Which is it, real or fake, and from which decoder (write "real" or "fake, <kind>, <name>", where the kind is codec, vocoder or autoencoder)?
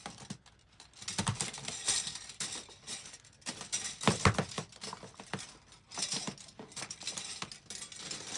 real